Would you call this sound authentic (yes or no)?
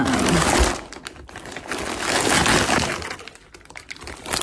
yes